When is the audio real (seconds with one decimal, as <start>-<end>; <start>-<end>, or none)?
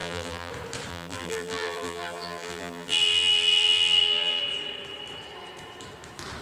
0.5-0.9; 4.4-6.4